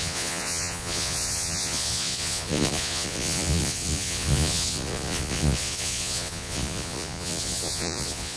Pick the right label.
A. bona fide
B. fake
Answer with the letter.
B